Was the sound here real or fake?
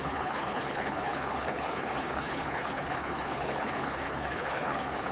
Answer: fake